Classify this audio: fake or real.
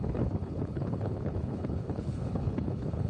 fake